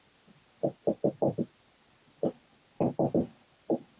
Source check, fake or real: real